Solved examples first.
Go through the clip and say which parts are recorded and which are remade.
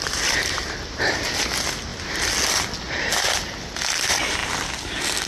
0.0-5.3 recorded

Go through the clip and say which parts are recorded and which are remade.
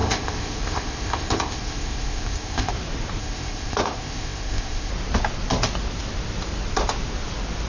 0.0-2.7 remade; 2.7-3.2 recorded; 3.2-4.9 remade; 4.9-7.7 recorded